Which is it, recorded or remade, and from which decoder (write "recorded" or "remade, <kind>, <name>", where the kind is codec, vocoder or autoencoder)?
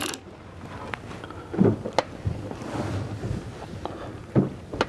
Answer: recorded